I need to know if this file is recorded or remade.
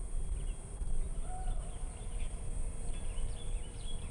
recorded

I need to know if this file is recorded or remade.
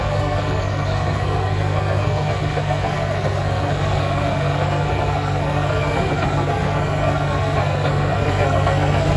remade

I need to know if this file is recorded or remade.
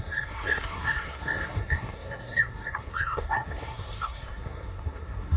remade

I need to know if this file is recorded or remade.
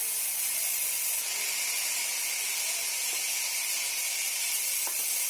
recorded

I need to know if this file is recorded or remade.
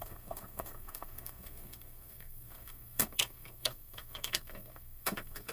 remade